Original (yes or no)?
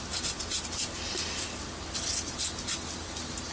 yes